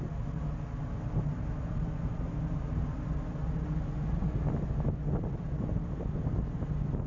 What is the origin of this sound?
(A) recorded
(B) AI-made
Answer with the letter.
A